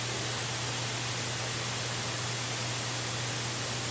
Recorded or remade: recorded